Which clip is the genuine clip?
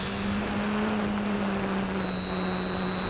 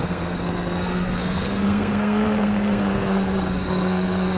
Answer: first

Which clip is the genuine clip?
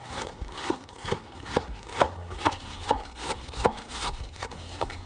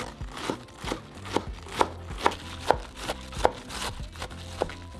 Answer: second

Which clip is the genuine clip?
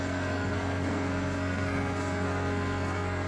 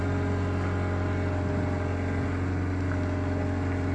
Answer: second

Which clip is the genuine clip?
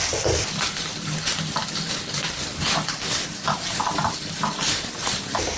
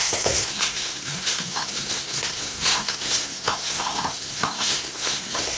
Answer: first